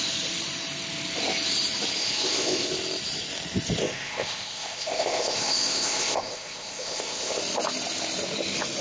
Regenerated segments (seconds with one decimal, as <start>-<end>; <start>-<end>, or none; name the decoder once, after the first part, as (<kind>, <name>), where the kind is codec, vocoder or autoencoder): 2.0-2.7 (codec, ZipCodec); 3.8-7.4